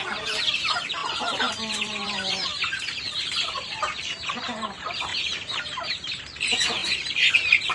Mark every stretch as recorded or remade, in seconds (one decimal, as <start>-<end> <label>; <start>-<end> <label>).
0.0-7.7 remade